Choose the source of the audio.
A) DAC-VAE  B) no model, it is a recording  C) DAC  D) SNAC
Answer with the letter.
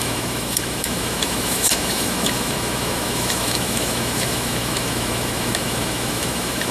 A